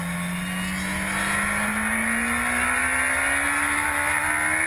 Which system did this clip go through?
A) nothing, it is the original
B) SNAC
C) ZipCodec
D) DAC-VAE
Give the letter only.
A